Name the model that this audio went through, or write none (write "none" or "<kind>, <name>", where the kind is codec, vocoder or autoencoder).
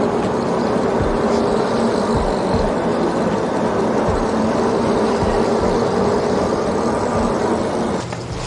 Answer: none